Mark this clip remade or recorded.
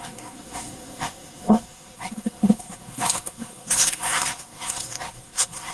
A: remade